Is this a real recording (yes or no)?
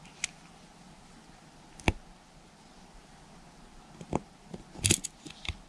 yes